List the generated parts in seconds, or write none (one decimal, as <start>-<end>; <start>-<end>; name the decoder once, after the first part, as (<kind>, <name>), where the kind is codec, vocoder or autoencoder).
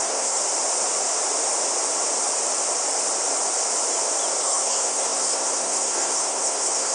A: 0.0-0.4 (codec, SNAC); 4.4-6.9